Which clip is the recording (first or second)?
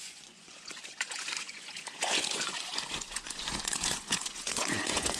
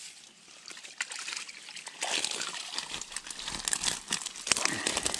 second